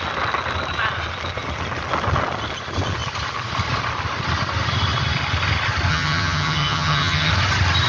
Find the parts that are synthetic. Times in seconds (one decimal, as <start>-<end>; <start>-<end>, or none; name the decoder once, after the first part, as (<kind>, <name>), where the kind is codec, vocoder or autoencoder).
5.9-7.3 (vocoder, HiFi-GAN)